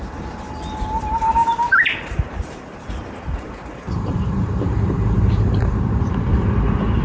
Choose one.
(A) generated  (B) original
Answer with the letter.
A